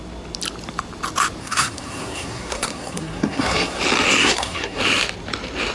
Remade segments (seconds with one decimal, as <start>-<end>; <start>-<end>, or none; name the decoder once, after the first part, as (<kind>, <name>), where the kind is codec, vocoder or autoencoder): 1.4-3.8 (codec, SNAC); 4.2-4.8